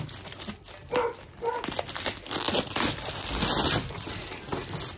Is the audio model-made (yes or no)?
no